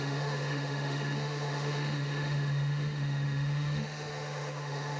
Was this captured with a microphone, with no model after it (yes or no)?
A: no